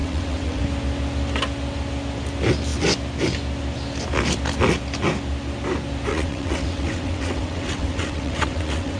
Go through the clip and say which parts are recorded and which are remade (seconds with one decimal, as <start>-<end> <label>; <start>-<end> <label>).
0.0-0.6 remade; 0.6-6.1 recorded; 6.1-9.0 remade